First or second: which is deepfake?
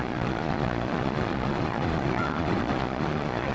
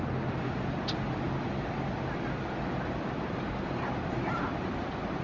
first